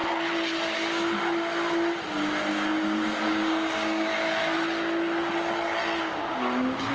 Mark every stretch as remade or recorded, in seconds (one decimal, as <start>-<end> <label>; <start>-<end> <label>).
0.0-2.5 recorded; 2.5-4.1 remade; 4.1-6.0 recorded; 6.0-6.9 remade